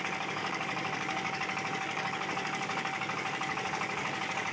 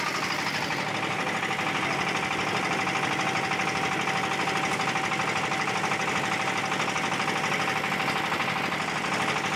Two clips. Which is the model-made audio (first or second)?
first